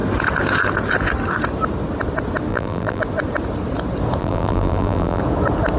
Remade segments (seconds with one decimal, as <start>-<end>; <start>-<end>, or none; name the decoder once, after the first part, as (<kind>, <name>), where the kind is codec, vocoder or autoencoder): 2.5-3.0 (vocoder, BigVGAN v2); 4.2-5.2